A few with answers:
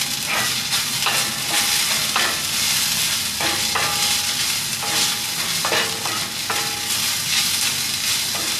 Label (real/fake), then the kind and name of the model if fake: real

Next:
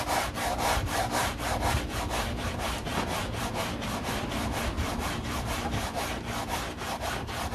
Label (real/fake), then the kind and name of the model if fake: fake, vocoder, BigVGAN v2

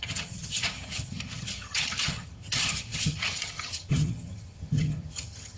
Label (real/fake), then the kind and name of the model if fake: fake, vocoder, HiFi-GAN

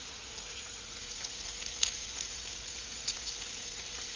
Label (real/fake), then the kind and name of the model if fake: fake, vocoder, Vocos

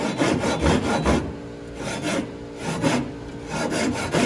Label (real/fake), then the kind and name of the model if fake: real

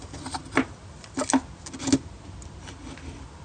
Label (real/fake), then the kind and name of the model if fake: real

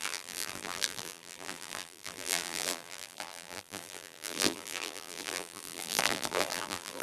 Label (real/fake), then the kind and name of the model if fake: fake, vocoder, BigVGAN v2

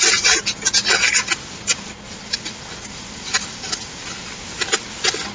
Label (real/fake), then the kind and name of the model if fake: real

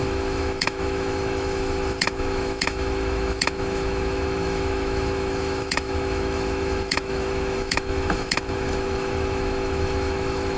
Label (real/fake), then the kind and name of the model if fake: fake, autoencoder, DAC-VAE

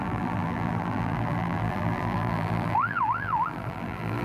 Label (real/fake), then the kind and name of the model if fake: fake, vocoder, BigVGAN v2